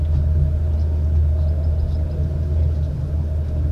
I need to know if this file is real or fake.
real